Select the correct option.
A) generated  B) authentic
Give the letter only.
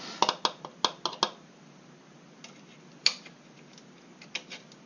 B